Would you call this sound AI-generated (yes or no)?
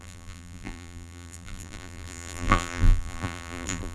yes